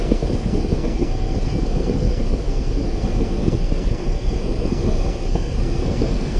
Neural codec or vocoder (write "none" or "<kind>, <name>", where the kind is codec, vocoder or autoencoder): codec, SNAC